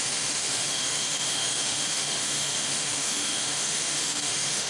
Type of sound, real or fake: fake